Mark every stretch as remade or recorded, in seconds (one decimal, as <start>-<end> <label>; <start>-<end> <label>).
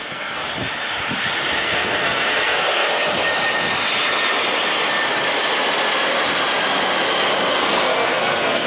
0.0-0.4 remade; 0.4-1.6 recorded; 1.6-2.9 remade; 2.9-7.5 recorded; 7.5-8.7 remade